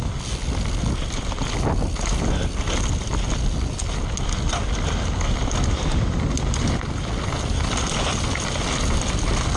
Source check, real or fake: real